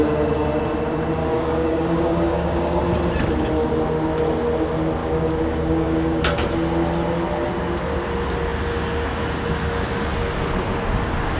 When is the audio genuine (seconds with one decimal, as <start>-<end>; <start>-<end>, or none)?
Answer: 0.0-1.2; 2.8-5.0; 6.2-11.4